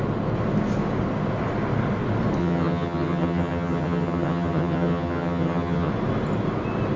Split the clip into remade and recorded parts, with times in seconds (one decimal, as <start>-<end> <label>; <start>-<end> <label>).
0.0-2.4 recorded; 2.4-5.9 remade; 5.9-7.0 recorded